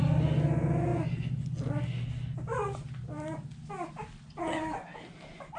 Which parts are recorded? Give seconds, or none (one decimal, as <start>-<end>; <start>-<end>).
0.0-5.6